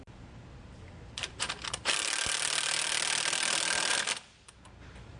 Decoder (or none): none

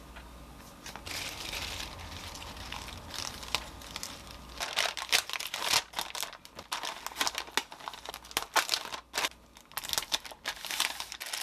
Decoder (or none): none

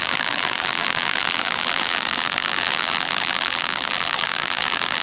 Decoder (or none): vocoder, BigVGAN v2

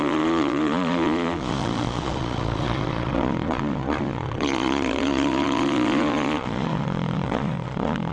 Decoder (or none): vocoder, Vocos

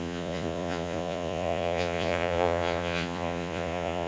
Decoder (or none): vocoder, Vocos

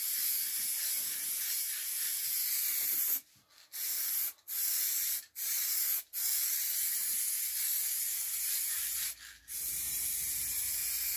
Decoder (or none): none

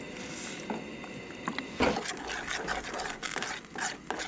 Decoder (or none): none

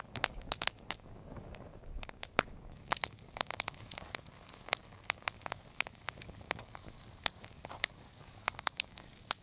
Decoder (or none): codec, DAC